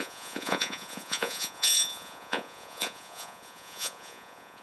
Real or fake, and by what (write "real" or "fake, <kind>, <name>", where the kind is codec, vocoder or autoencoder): fake, vocoder, Vocos